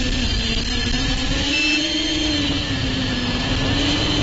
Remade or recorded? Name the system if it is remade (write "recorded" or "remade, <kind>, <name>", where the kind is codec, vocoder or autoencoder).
recorded